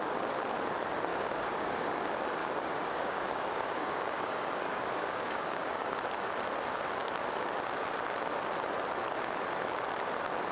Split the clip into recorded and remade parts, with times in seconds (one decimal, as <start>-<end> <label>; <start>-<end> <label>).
0.0-1.1 recorded; 1.1-1.9 remade; 1.9-2.4 recorded; 2.4-6.1 remade; 6.1-10.5 recorded